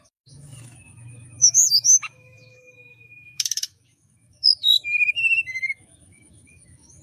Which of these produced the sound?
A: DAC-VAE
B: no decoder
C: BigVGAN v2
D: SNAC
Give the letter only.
A